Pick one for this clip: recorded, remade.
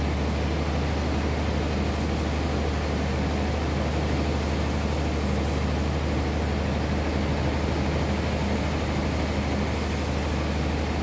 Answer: recorded